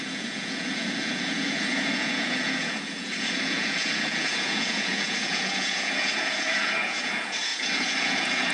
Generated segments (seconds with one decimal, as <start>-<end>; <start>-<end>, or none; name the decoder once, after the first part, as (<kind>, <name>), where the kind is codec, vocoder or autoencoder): 0.0-8.5 (vocoder, Vocos)